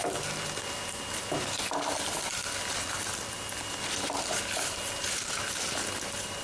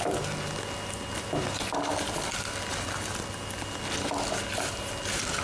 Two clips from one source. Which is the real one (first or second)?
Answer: second